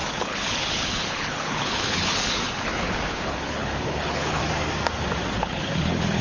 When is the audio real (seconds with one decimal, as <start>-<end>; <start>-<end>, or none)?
4.4-5.4